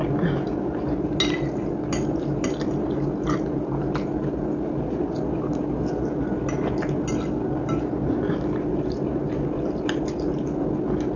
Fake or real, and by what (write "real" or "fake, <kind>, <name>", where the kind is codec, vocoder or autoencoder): real